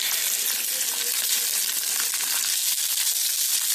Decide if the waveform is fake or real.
real